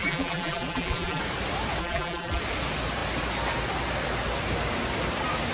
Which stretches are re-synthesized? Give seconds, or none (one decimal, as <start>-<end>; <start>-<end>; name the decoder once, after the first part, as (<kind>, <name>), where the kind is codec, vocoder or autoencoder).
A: 0.0-1.2 (vocoder, BigVGAN v2); 1.8-2.4